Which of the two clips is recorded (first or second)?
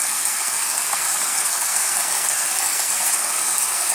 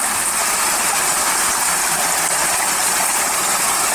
second